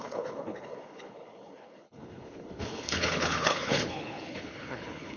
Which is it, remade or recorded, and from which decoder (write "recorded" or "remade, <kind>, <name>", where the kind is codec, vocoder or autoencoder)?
remade, codec, HILCodec